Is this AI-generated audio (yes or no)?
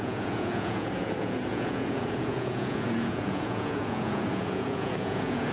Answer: yes